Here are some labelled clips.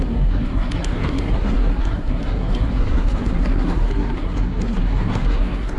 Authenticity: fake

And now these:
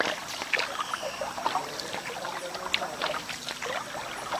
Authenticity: real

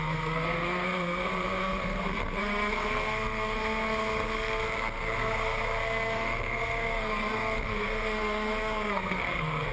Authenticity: fake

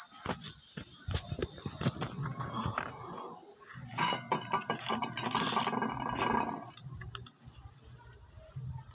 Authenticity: real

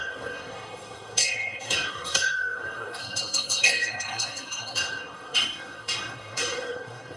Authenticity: fake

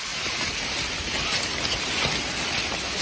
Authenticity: real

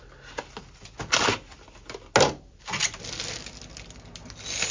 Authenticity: real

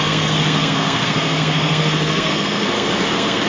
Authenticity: fake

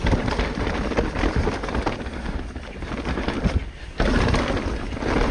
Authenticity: real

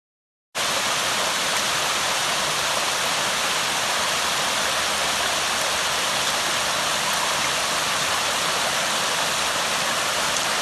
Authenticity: real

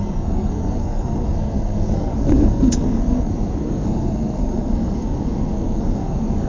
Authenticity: fake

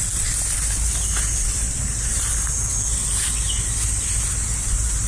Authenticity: real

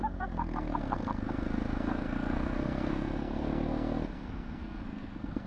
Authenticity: fake